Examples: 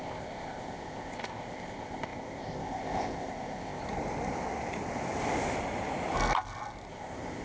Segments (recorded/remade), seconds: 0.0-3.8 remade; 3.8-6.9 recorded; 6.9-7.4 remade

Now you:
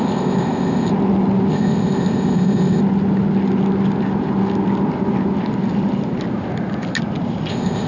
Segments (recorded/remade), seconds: 0.0-0.9 remade; 0.9-1.5 recorded; 1.5-2.8 remade; 2.8-7.5 recorded; 7.5-7.9 remade

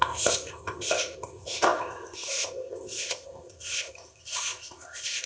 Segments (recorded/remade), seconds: 0.0-5.3 remade

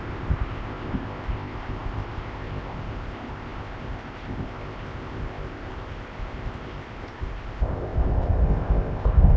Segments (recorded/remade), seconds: 0.0-9.4 remade

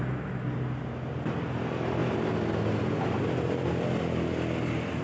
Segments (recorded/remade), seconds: 0.0-5.0 recorded